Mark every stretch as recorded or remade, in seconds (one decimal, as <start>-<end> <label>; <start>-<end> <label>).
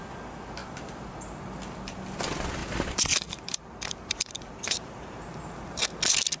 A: 0.0-0.6 recorded; 0.6-1.1 remade; 1.1-2.6 recorded; 2.6-5.8 remade; 5.8-6.4 recorded